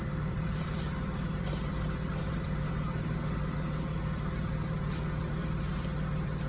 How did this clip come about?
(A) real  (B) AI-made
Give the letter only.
B